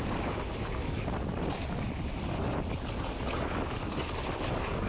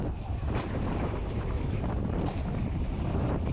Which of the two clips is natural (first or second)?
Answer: first